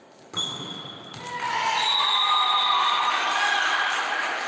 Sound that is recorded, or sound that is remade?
recorded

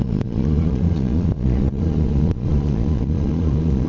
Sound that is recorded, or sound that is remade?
remade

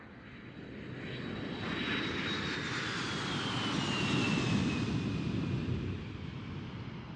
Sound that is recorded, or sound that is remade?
recorded